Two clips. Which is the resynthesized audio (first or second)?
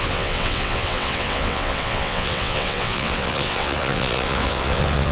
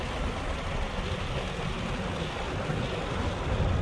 first